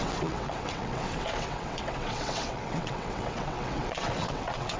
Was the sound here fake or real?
fake